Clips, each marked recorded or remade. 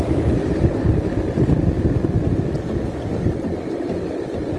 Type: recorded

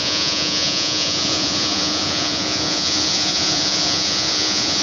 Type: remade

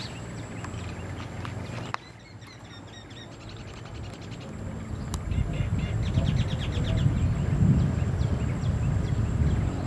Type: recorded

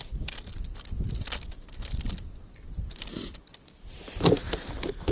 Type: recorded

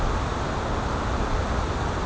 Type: recorded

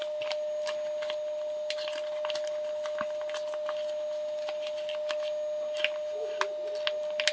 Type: recorded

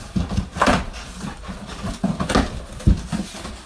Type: recorded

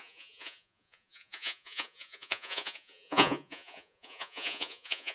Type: remade